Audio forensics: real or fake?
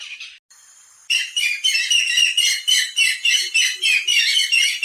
real